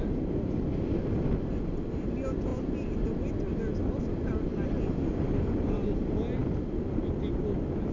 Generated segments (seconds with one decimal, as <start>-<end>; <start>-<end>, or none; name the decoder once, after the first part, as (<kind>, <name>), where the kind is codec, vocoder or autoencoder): none